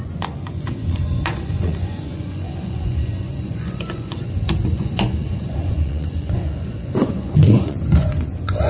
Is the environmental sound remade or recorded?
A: remade